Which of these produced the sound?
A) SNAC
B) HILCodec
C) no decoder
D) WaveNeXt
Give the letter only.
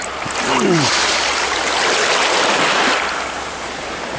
C